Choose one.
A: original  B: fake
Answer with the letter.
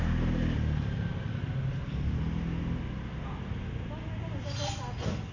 A